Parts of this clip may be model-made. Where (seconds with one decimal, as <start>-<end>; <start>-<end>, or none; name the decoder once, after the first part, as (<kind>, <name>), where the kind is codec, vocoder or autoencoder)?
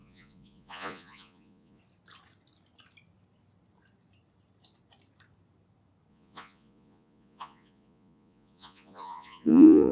0.0-1.8 (vocoder, Vocos); 6.1-9.9